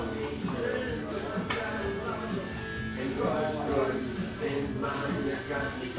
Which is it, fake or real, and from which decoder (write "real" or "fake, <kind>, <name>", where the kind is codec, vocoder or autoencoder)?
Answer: real